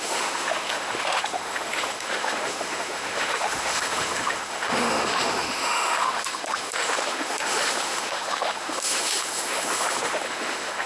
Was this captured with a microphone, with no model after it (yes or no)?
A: no